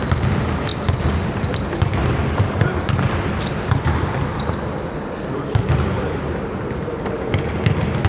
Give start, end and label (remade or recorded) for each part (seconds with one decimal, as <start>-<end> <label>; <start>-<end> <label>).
0.0-0.7 recorded; 0.7-3.0 remade; 3.0-4.3 recorded; 4.3-7.3 remade; 7.3-8.1 recorded